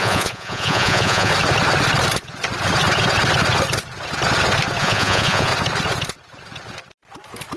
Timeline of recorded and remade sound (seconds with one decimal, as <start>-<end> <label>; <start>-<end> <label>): 0.0-1.3 remade; 1.3-4.8 recorded; 4.8-5.5 remade; 5.5-7.6 recorded